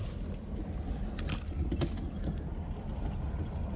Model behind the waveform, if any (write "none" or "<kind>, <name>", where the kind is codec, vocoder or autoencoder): none